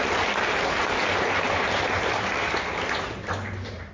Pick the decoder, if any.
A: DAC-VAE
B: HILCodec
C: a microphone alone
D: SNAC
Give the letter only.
C